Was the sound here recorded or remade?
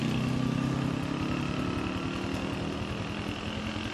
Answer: recorded